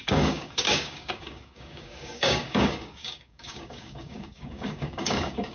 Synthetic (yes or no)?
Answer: yes